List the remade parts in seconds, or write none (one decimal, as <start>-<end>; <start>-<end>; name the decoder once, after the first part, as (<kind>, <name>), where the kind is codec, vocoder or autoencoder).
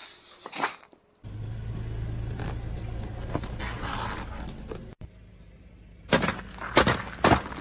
none